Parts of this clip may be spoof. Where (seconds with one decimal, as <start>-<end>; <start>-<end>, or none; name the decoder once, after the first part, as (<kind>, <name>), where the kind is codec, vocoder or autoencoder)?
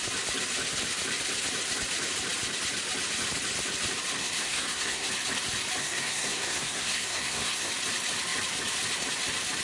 4.2-5.1 (codec, SNAC); 5.8-7.7